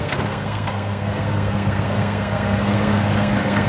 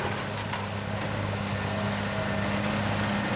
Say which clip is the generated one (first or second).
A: first